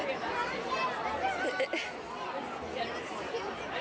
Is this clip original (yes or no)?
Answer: yes